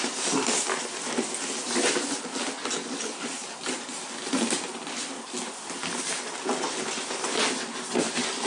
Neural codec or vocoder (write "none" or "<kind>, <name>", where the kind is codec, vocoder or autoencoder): none